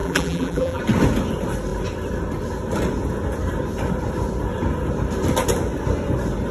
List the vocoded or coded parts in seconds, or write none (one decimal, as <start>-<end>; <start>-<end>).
0.0-0.8